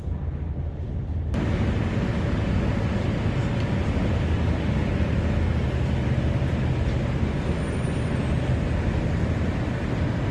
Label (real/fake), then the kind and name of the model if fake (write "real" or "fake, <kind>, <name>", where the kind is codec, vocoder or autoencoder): real